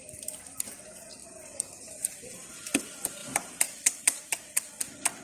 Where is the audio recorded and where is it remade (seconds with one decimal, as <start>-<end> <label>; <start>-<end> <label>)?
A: 0.0-1.2 recorded; 1.2-2.2 remade; 2.2-3.2 recorded; 3.2-4.0 remade; 4.0-5.2 recorded